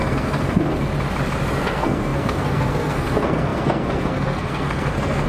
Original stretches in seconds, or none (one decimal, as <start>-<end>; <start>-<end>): 0.9-1.6